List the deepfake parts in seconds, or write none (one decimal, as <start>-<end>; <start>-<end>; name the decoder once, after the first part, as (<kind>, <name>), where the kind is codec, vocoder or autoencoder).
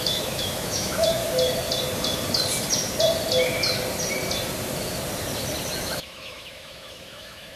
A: 0.0-1.2 (autoencoder, DAC-VAE); 5.8-7.6